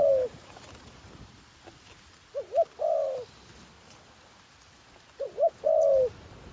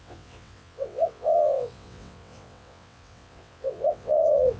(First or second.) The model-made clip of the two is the second